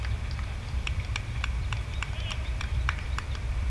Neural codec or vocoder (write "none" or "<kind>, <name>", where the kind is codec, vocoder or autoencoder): vocoder, BigVGAN v2